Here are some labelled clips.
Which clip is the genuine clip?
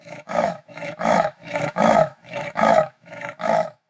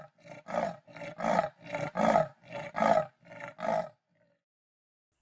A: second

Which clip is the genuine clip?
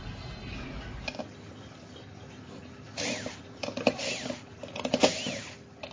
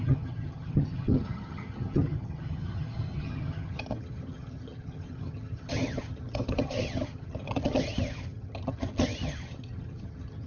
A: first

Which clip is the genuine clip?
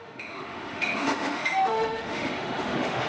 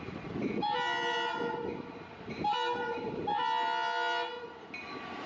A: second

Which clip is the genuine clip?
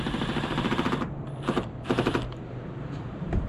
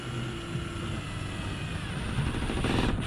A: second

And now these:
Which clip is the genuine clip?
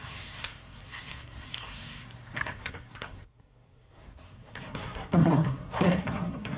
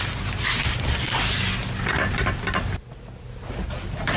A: second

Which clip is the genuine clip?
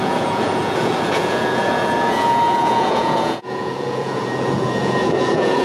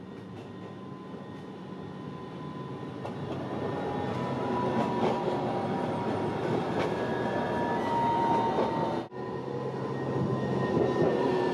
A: second